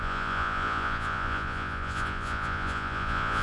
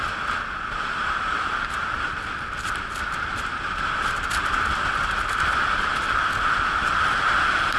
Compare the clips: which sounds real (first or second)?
second